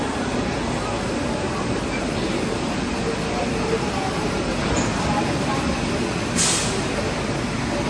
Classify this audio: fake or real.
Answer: real